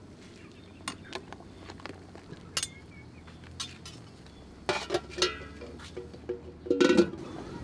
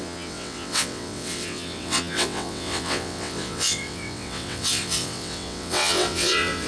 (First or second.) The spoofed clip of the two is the second